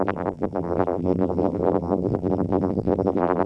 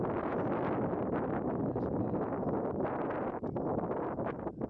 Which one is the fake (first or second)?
first